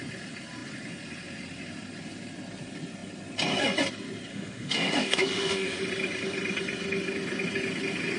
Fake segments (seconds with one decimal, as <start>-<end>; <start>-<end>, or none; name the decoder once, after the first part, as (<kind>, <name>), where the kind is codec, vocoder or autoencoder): 4.3-5.8 (autoencoder, DAC-VAE)